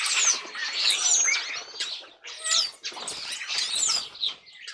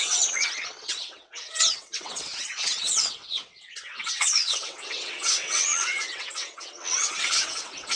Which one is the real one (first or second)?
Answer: first